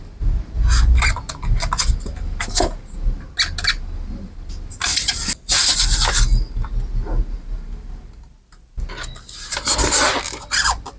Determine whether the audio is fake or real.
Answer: real